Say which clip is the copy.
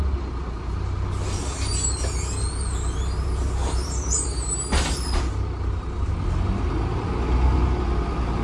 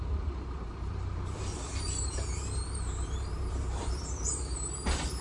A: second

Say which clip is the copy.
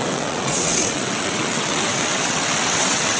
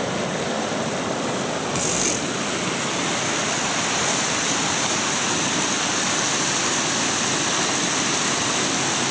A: first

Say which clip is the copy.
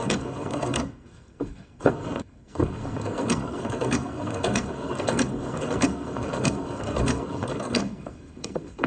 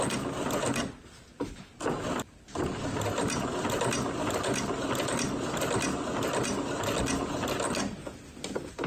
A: first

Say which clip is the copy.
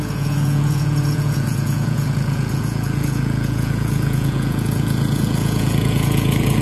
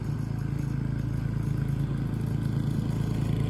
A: first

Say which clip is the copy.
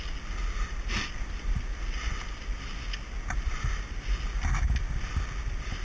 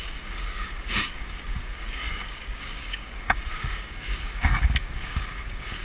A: second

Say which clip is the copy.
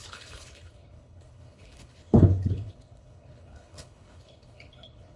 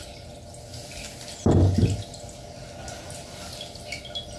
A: first